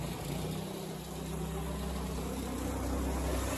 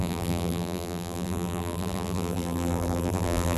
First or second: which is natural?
first